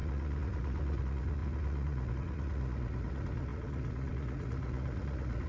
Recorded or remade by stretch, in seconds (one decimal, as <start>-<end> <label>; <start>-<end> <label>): 0.0-5.5 remade